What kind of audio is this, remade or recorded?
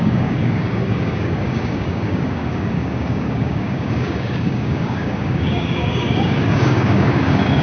remade